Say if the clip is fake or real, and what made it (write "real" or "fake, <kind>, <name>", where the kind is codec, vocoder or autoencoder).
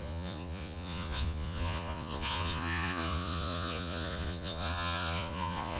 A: fake, vocoder, Vocos